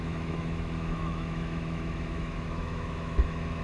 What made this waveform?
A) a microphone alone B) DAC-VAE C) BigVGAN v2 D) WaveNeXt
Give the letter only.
B